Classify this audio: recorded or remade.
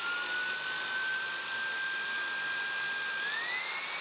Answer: recorded